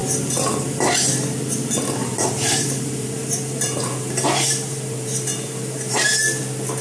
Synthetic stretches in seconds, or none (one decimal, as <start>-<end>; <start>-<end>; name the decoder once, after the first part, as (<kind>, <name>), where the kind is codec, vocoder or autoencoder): 2.0-6.1 (vocoder, BigVGAN v2)

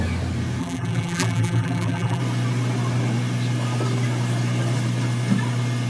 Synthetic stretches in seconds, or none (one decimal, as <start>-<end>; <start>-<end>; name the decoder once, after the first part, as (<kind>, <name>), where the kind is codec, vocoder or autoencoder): 0.6-2.2 (vocoder, BigVGAN v2)

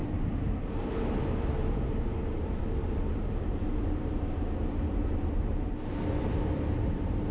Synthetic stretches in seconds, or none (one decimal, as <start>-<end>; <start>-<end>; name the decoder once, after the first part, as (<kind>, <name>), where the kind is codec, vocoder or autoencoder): 0.0-2.6 (vocoder, BigVGAN v2); 3.1-7.3

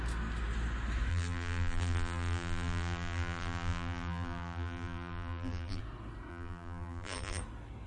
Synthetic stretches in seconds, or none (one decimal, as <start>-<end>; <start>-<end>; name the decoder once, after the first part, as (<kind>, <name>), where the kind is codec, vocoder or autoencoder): 1.1-5.8 (vocoder, BigVGAN v2); 6.3-7.4

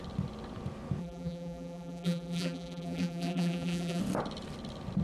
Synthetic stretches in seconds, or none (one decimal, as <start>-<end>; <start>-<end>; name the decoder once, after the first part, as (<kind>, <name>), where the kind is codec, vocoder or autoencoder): 1.0-4.0 (vocoder, BigVGAN v2)

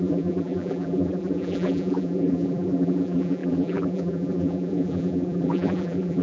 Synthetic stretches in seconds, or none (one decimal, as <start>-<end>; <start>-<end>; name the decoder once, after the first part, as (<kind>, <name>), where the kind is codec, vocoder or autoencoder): 0.0-6.2 (vocoder, BigVGAN v2)

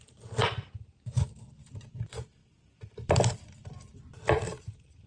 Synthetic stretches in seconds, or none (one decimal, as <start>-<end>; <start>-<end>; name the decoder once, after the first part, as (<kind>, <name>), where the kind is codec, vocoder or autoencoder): 2.4-5.1 (vocoder, BigVGAN v2)